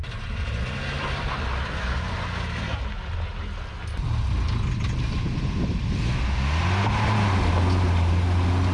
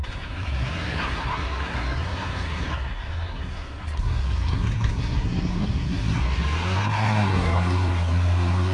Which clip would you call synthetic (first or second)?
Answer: second